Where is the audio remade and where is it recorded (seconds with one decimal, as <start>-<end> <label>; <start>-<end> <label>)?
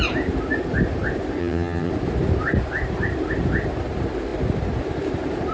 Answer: 0.0-1.4 recorded; 1.4-1.9 remade; 1.9-5.5 recorded